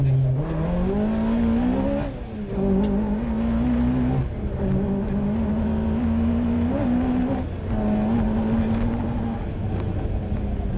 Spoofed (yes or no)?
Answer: no